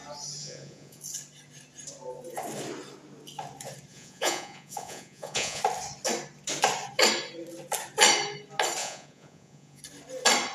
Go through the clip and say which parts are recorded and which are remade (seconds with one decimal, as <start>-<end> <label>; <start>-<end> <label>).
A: 0.0-0.4 recorded; 0.4-1.0 remade; 1.0-3.9 recorded; 3.9-5.6 remade; 5.6-8.8 recorded; 8.8-9.8 remade; 9.8-10.5 recorded